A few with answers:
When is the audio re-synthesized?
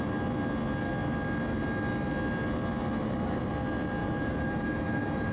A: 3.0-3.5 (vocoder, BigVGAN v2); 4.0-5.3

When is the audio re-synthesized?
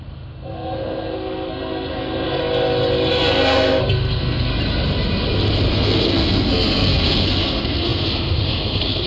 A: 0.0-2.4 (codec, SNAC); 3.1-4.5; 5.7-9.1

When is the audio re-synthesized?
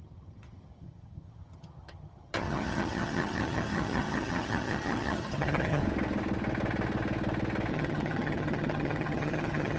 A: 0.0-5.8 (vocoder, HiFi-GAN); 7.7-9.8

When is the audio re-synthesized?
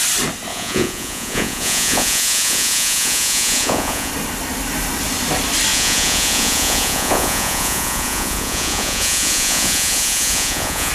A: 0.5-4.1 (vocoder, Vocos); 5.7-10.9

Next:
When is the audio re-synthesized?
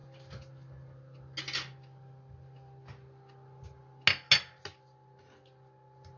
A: none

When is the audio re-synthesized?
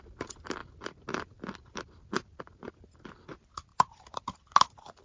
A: none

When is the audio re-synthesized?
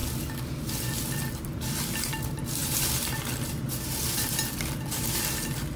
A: none